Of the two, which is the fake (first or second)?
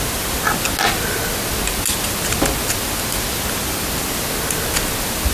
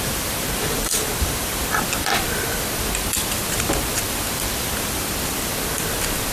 second